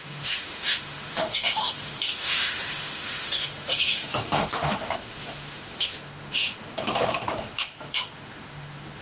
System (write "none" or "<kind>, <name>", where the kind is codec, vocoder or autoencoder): autoencoder, DAC-VAE